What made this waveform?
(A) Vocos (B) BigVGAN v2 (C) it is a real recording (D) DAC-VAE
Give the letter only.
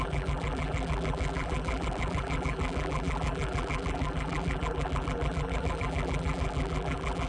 B